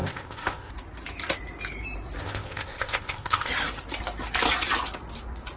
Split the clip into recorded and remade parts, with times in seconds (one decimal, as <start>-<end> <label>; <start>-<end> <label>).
0.0-0.7 remade; 0.7-2.2 recorded; 2.2-3.5 remade; 3.5-5.6 recorded